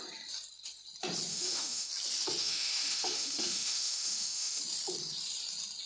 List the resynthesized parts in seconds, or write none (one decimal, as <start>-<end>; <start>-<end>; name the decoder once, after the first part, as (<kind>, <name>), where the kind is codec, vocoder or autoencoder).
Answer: 1.3-1.9 (autoencoder, DAC-VAE); 2.4-4.6